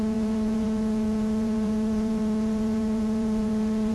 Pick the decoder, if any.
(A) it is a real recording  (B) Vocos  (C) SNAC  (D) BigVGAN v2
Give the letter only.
B